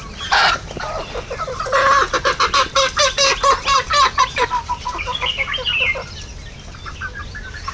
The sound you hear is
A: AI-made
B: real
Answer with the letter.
B